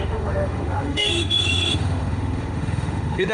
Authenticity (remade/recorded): remade